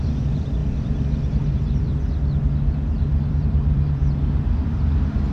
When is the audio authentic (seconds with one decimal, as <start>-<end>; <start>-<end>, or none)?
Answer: 0.6-1.4; 1.9-3.3; 4.0-5.3